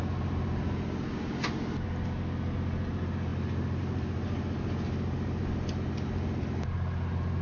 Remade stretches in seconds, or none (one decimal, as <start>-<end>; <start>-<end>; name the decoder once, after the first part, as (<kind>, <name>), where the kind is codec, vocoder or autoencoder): none